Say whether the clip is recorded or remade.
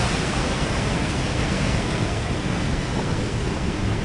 remade